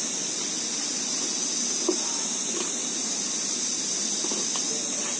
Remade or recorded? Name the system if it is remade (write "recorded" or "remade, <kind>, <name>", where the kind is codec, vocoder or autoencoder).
recorded